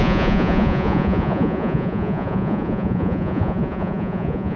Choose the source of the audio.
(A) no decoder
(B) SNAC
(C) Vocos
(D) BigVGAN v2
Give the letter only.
C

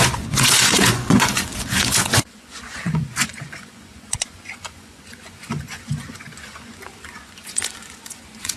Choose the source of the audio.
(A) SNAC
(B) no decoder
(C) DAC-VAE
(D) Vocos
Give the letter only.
D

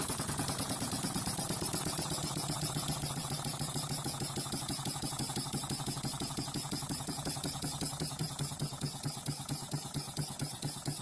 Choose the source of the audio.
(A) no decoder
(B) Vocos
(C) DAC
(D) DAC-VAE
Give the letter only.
B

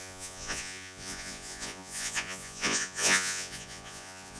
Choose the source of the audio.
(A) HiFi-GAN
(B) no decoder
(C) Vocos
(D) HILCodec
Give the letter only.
C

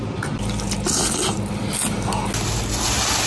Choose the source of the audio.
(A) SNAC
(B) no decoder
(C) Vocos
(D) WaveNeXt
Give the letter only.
B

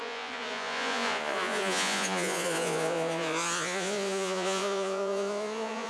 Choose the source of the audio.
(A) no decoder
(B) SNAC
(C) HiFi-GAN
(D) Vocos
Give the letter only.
D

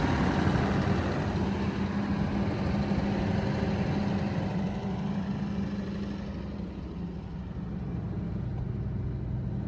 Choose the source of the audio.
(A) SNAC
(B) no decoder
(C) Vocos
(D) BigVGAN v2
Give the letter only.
B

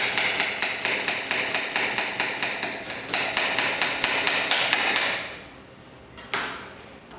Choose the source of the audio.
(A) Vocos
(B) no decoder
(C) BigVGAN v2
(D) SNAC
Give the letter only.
B